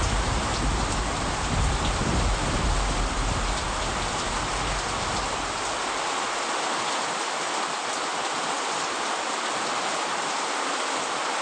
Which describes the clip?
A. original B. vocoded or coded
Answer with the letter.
A